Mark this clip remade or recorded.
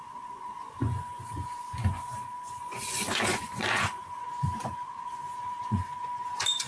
remade